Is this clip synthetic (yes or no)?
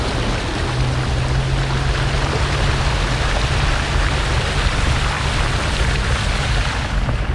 no